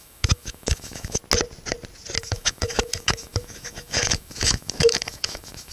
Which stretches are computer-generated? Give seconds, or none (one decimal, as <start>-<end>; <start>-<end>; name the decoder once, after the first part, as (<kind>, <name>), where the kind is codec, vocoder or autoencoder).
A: 0.0-1.2 (autoencoder, DAC-VAE); 2.2-5.7